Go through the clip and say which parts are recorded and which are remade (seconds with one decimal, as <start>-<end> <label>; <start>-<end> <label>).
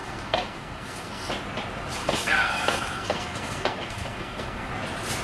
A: 0.0-1.3 remade; 1.3-2.0 recorded; 2.0-4.7 remade; 4.7-5.2 recorded